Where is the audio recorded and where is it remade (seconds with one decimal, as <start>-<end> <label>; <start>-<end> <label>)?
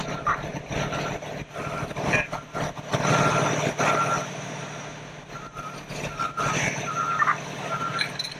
0.0-8.4 recorded